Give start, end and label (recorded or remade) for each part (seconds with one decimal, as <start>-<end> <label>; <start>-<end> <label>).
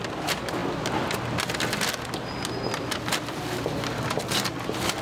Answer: 0.0-5.0 recorded